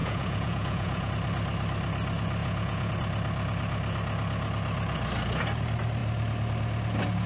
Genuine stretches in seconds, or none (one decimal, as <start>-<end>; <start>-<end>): 1.1-2.4; 2.9-7.3